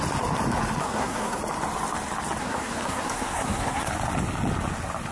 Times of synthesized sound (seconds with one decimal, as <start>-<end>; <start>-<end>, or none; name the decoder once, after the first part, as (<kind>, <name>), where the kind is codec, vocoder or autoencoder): 0.8-1.4 (codec, SNAC); 2.4-3.9